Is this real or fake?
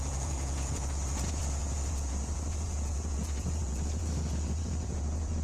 fake